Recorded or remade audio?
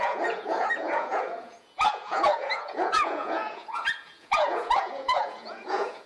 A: remade